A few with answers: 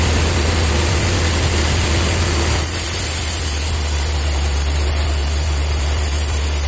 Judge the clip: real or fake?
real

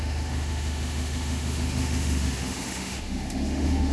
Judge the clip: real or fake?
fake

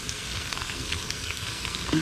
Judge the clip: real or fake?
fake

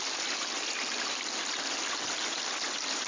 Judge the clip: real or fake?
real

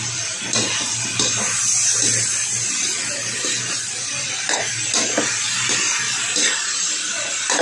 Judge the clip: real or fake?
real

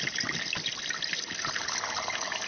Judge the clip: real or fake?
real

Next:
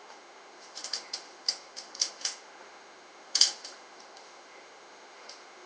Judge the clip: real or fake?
fake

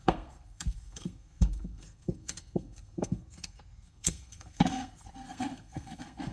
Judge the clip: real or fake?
fake